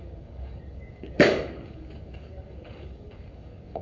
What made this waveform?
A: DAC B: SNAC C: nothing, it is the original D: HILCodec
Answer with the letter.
A